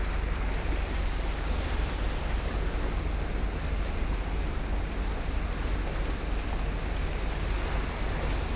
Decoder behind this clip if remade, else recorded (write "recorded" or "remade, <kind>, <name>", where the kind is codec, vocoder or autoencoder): recorded